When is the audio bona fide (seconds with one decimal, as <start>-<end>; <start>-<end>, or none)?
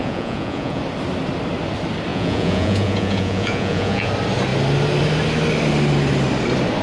0.8-2.1; 4.1-6.8